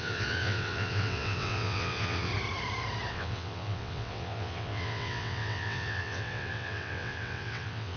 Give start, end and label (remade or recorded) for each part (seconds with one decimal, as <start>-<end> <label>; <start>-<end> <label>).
0.0-2.3 remade; 2.3-3.1 recorded; 3.1-8.0 remade